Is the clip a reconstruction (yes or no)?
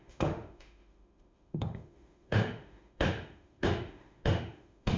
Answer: yes